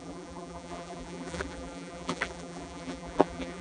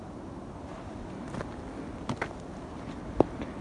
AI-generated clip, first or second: first